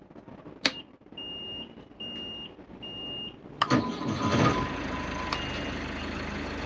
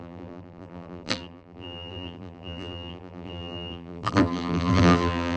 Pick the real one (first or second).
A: first